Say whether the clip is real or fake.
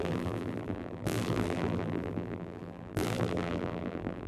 fake